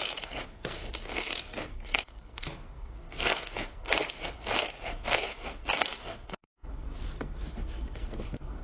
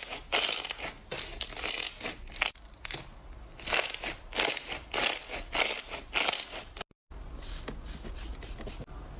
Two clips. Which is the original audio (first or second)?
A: second